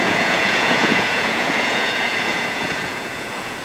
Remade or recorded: remade